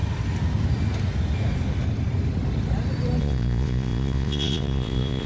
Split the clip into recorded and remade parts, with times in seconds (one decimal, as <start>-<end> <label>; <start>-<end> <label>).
0.0-3.2 recorded; 3.2-5.3 remade